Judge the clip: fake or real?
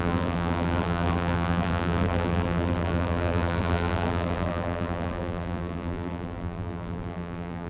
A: fake